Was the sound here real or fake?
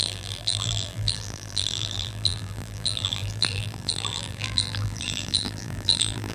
fake